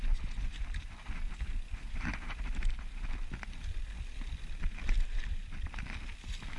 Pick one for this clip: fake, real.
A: real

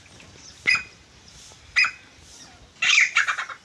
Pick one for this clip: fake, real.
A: real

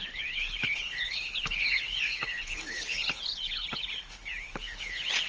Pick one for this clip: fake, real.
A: fake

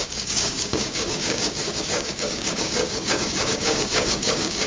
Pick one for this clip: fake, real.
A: fake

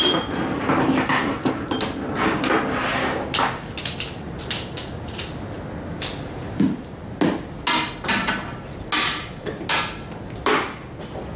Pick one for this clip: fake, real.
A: real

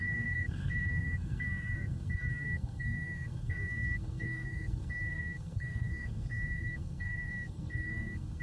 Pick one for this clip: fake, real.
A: fake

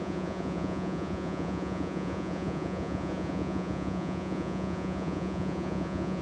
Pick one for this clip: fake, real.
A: fake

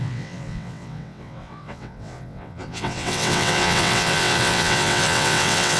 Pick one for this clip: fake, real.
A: fake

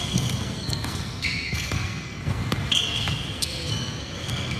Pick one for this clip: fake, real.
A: fake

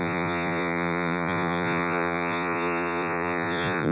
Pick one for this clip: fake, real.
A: fake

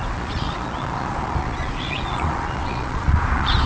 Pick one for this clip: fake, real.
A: fake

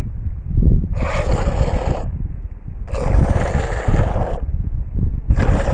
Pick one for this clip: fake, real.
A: real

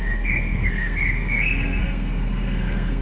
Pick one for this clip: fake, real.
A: fake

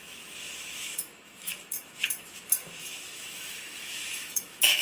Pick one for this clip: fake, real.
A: fake